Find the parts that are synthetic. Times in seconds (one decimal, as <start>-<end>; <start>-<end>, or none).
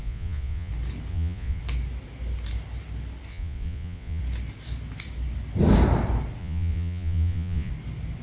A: 0.0-0.7; 1.1-1.6; 3.3-4.2; 6.4-7.7